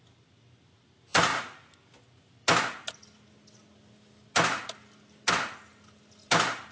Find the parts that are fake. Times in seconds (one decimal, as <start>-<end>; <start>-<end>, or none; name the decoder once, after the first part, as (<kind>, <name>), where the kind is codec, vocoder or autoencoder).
none